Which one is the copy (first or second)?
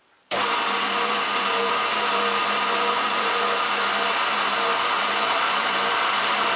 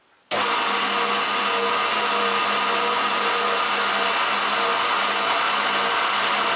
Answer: first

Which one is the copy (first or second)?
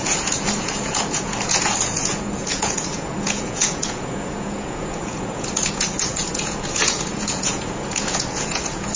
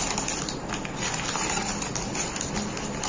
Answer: first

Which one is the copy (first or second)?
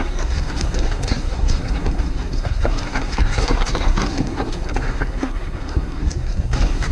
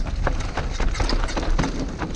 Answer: first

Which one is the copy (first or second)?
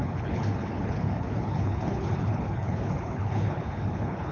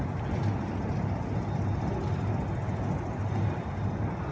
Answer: first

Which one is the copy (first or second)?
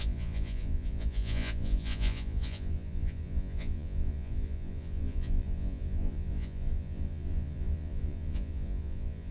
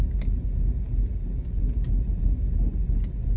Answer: first